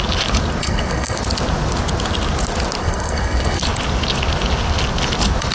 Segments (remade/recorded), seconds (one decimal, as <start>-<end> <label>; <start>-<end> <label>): 0.0-0.6 recorded; 0.6-1.2 remade; 1.2-2.8 recorded; 2.8-3.6 remade; 3.6-5.5 recorded

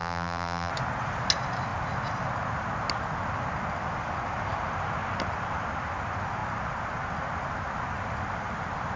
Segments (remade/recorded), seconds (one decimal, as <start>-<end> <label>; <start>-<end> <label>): 0.0-0.7 remade; 0.7-9.0 recorded

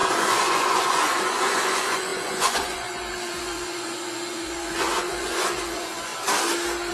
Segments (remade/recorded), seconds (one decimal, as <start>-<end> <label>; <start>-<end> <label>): 0.0-6.1 remade; 6.1-6.9 recorded

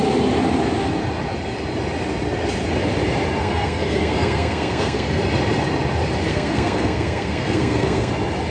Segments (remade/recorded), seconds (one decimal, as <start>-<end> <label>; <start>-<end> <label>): 0.0-3.4 recorded; 3.4-5.2 remade; 5.2-6.3 recorded; 6.3-8.1 remade; 8.1-8.5 recorded

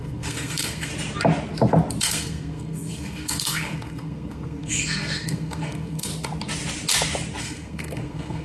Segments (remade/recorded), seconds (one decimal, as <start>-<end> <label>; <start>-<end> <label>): 0.0-0.9 remade; 0.9-2.0 recorded; 2.0-6.1 remade; 6.1-7.4 recorded; 7.4-8.4 remade

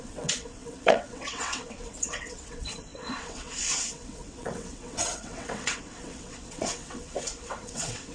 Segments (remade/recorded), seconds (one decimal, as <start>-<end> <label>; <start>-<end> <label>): 0.0-8.1 remade

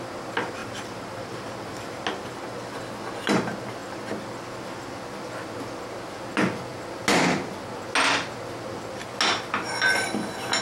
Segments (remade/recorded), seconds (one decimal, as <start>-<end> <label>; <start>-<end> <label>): 0.0-0.6 recorded; 0.6-1.9 remade; 1.9-10.6 recorded